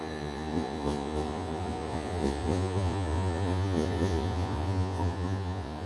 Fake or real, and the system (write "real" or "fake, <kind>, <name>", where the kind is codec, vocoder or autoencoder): fake, vocoder, Vocos